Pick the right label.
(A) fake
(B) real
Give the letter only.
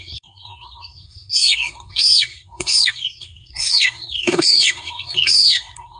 A